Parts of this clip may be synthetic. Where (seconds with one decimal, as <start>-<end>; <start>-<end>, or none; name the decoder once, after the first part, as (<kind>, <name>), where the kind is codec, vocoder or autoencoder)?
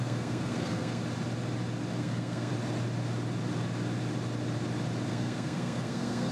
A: 0.0-1.0 (codec, SNAC); 2.0-2.5; 5.1-6.3